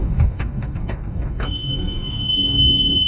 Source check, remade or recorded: remade